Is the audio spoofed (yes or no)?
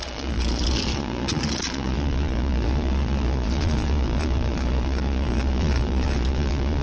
yes